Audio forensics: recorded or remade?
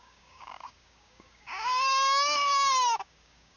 remade